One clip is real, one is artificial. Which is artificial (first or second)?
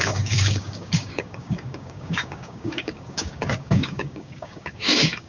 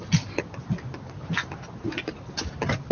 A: first